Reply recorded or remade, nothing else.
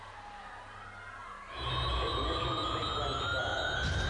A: recorded